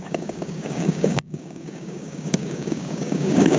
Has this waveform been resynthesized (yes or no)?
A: yes